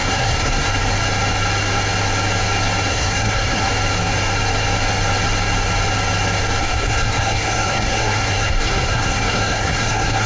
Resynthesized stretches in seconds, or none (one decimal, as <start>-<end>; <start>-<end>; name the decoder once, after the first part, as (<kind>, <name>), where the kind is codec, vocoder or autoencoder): 0.0-0.7 (codec, SNAC); 2.9-3.7; 6.6-10.3